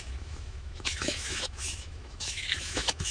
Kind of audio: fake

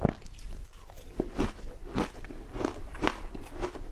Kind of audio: real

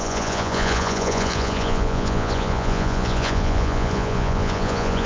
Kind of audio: fake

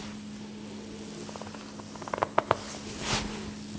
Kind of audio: real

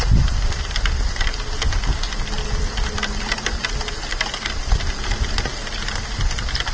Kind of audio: real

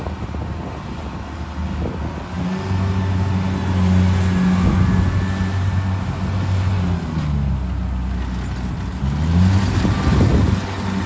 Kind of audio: real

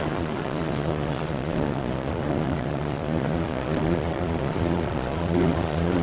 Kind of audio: fake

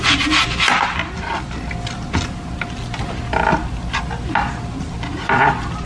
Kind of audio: real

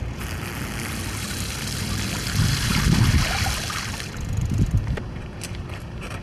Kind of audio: fake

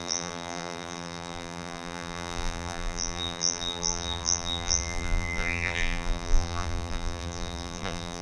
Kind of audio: fake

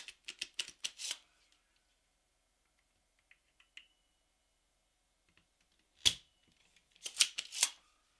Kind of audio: real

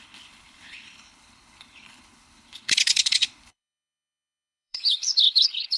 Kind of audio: fake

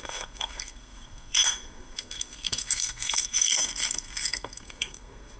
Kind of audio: fake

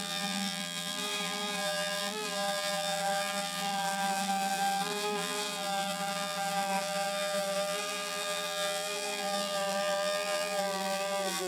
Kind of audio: fake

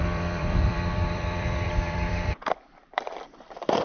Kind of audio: fake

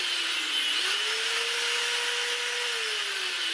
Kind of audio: real